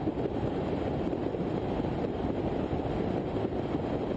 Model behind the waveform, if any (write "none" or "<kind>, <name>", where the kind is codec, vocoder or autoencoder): none